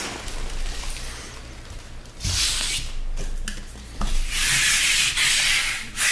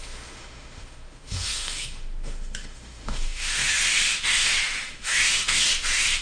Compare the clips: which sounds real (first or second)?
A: first